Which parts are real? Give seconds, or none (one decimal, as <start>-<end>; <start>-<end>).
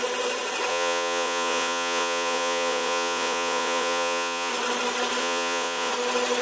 0.0-0.7; 4.5-5.2; 5.9-6.4